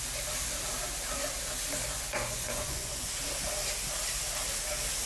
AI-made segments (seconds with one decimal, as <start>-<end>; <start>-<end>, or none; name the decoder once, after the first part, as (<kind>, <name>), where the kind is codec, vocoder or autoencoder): 1.9-3.1 (vocoder, Vocos)